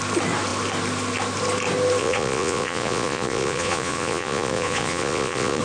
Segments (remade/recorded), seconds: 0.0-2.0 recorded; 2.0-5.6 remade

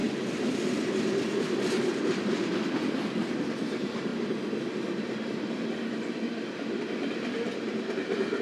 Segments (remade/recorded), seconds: 0.0-8.4 recorded

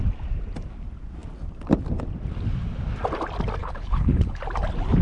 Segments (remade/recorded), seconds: 0.0-3.6 recorded; 3.6-4.4 remade; 4.4-5.0 recorded

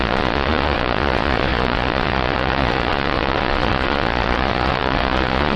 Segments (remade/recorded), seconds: 0.0-5.6 remade

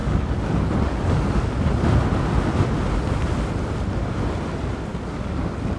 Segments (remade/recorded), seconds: 0.0-1.5 remade; 1.5-4.9 recorded; 4.9-5.8 remade

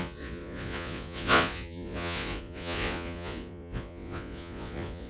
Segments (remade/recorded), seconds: 0.0-5.1 remade